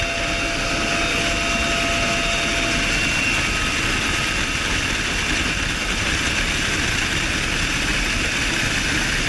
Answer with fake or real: real